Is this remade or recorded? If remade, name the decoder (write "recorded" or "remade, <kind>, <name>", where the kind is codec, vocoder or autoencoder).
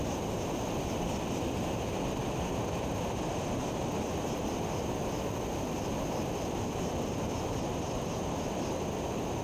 recorded